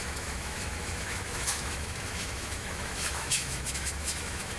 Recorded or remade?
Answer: remade